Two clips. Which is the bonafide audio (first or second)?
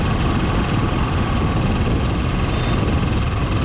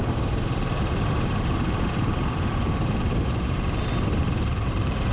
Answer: first